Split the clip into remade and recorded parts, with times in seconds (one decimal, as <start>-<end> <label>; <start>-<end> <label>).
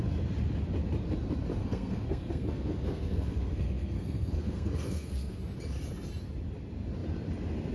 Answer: 0.0-1.6 recorded; 1.6-5.4 remade; 5.4-7.7 recorded